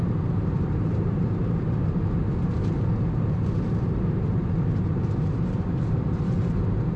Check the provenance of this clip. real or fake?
fake